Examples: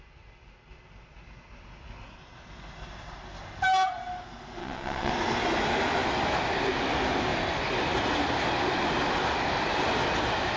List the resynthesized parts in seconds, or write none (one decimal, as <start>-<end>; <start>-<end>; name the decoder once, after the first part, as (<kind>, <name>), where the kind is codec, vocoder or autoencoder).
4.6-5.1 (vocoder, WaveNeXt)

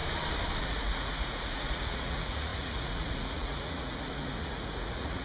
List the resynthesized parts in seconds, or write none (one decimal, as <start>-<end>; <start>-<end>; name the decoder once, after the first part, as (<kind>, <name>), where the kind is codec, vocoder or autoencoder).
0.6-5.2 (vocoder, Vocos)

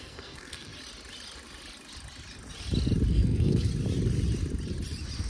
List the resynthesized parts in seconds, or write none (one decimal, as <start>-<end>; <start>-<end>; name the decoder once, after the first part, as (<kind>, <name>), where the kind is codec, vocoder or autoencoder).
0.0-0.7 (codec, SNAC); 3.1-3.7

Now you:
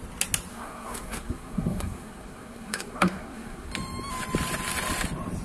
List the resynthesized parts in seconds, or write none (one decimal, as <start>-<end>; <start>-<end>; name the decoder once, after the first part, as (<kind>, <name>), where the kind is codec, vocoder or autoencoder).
0.5-3.7 (codec, SNAC)

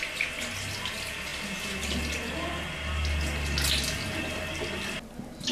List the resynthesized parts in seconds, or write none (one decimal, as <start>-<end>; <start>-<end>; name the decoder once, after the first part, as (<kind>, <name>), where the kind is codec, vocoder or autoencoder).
none

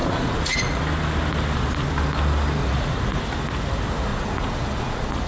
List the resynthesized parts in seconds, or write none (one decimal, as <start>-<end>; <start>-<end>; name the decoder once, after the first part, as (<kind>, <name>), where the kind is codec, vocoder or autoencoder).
0.0-0.8 (vocoder, Vocos); 2.6-3.2; 4.1-5.3

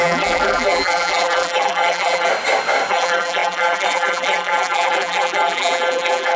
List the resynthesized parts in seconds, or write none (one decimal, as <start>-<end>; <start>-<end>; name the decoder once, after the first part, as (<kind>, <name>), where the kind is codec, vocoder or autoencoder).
0.0-2.3 (vocoder, BigVGAN v2); 2.9-6.4